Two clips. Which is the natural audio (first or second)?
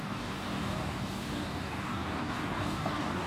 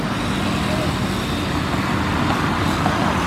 second